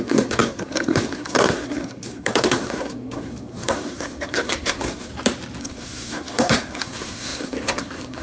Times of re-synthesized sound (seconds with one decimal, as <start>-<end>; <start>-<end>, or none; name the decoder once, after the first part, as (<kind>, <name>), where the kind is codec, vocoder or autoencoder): 0.0-5.1 (codec, SNAC); 5.6-8.2